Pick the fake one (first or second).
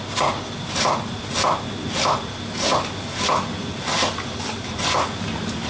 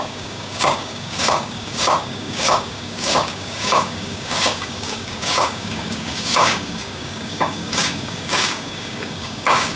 second